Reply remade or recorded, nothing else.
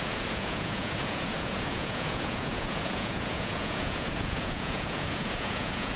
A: remade